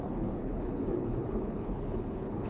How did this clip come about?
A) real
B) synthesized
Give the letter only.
B